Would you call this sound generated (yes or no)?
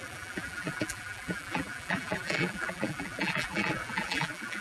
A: yes